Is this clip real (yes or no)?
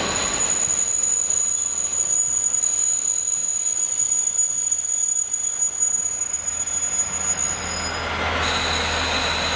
yes